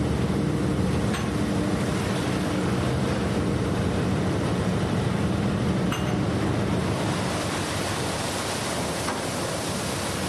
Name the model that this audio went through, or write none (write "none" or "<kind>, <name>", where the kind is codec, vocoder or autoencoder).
none